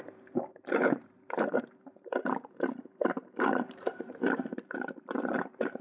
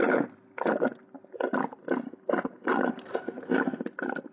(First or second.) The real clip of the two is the second